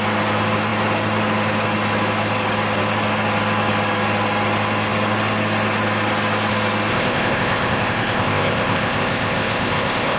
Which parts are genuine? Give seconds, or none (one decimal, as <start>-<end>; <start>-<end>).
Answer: 0.0-6.9